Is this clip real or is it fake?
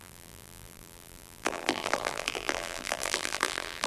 fake